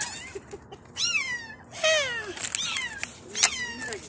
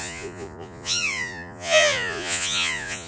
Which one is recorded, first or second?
first